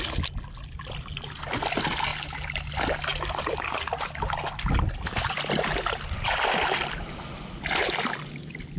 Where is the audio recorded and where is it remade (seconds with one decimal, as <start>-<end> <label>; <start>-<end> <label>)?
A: 0.0-8.8 recorded